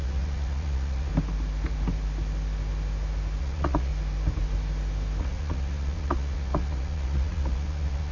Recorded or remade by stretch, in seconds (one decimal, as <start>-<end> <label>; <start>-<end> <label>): 0.0-1.1 remade; 1.1-3.4 recorded; 3.4-3.9 remade; 3.9-5.2 recorded; 5.2-8.1 remade